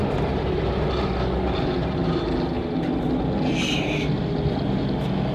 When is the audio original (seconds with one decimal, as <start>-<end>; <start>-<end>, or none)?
0.7-5.3